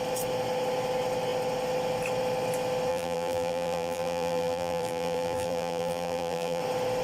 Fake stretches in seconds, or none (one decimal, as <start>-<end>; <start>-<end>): 2.9-6.6